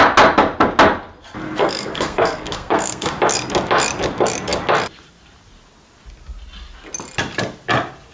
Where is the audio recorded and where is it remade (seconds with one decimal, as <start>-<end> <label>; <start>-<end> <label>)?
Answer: 0.0-1.6 recorded; 1.6-3.1 remade; 3.1-8.1 recorded